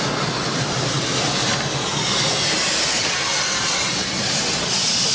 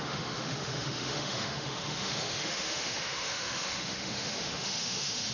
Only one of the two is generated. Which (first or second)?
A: second